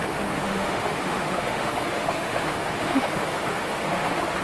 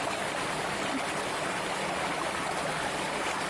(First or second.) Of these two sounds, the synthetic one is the first